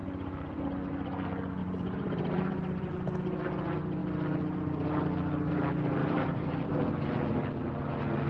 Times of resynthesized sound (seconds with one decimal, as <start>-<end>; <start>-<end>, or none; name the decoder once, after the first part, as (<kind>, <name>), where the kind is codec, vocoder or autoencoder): 1.6-2.9 (vocoder, BigVGAN v2); 6.0-6.7